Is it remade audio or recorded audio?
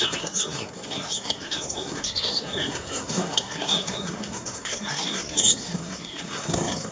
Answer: remade